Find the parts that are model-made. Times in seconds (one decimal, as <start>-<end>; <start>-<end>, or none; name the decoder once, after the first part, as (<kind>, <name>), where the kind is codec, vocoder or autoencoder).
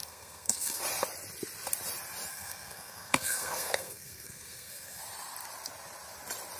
0.0-0.8 (codec, SNAC); 2.3-5.0